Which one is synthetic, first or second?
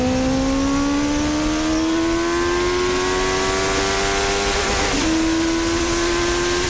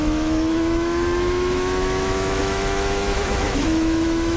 second